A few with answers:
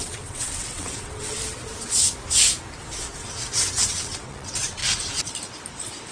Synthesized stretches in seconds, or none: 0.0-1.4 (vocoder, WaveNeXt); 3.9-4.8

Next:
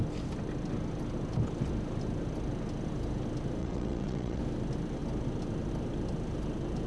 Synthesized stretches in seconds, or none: 3.6-4.4 (vocoder, WaveNeXt)

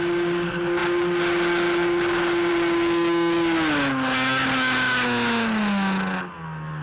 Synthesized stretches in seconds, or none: none

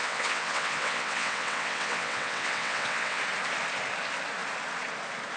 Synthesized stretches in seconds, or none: 0.0-3.2 (vocoder, WaveNeXt)

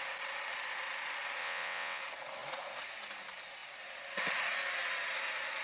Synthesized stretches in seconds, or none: 1.4-2.0 (vocoder, WaveNeXt)

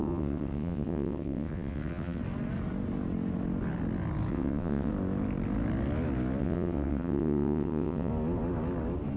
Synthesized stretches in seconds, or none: 0.0-2.2 (vocoder, WaveNeXt); 4.3-4.9; 6.4-8.1

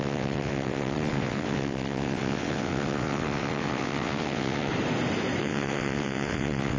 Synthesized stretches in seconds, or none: 0.0-4.7 (vocoder, WaveNeXt); 5.4-6.8

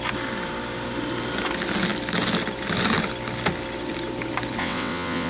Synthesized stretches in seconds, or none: 4.6-5.3 (vocoder, WaveNeXt)